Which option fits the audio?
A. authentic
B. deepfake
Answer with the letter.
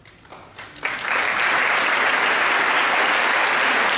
A